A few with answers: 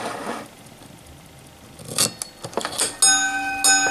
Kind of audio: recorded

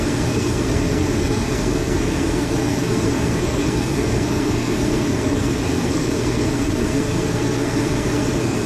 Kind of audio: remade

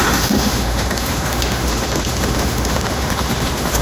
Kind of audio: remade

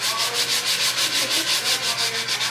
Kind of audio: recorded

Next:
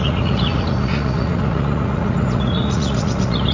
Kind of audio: remade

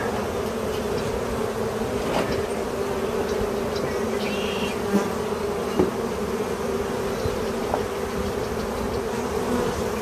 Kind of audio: recorded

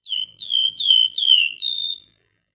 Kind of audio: remade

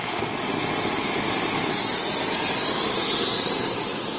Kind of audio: recorded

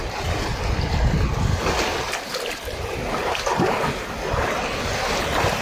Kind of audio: recorded